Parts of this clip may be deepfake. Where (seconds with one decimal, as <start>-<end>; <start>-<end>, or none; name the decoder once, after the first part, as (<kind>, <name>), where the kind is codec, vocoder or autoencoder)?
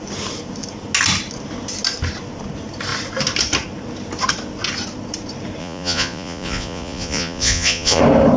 5.6-8.0 (vocoder, Vocos)